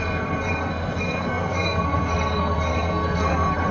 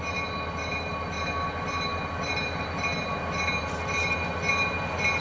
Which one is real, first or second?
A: second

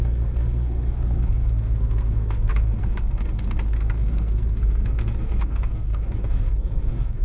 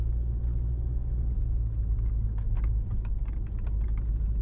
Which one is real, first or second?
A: second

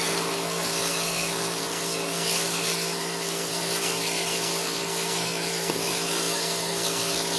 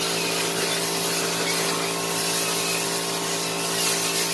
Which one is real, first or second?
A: second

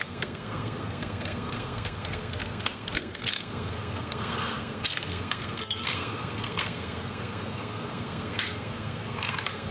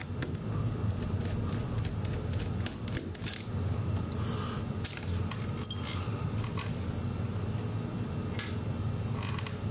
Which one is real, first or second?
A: second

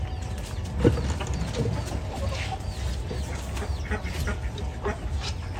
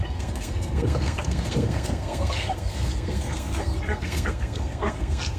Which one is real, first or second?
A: first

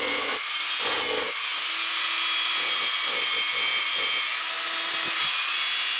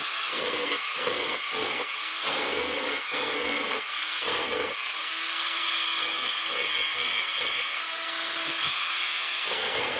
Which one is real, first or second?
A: first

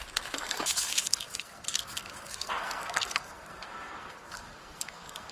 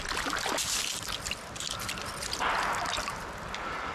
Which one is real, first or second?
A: second